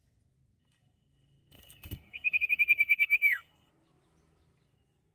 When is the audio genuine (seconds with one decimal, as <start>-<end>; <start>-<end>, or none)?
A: 0.0-0.6; 3.7-5.1